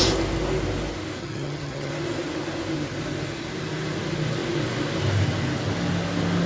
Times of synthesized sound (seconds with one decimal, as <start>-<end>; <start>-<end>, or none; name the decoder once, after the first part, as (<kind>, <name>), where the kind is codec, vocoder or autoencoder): 1.2-1.9 (vocoder, HiFi-GAN)